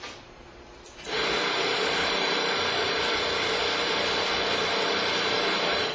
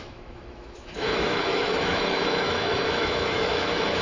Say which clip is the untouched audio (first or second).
first